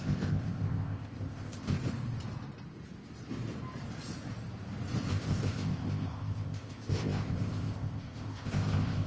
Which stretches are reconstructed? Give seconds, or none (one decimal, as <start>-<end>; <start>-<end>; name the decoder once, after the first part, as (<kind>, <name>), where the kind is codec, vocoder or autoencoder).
0.0-1.8 (codec, ZipCodec); 5.1-9.1